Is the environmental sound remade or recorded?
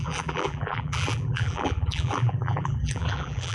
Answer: remade